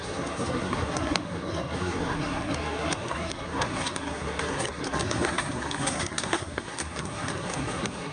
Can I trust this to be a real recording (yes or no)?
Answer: no